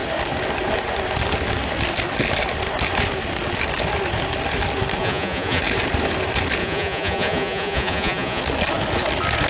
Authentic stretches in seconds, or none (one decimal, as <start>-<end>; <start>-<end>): 0.0-5.0; 5.6-6.6; 8.4-9.5